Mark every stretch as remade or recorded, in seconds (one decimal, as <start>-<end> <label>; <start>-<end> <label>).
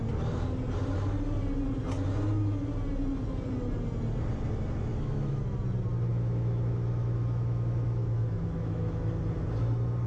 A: 0.0-4.9 recorded; 4.9-5.4 remade; 5.4-6.1 recorded; 6.1-9.1 remade; 9.1-10.1 recorded